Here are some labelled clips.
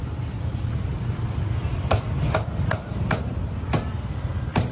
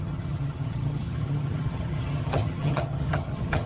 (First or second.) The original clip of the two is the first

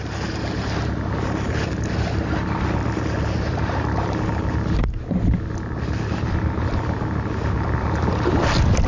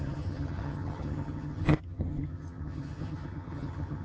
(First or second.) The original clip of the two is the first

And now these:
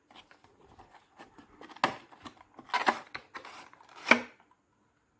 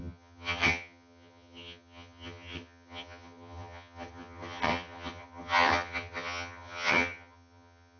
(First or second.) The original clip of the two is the first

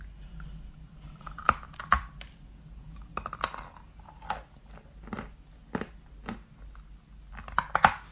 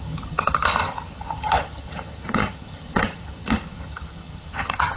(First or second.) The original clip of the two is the first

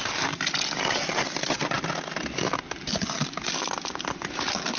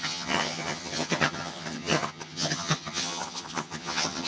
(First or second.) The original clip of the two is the first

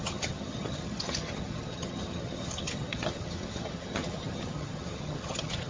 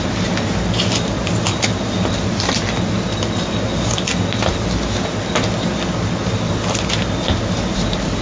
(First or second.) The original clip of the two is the second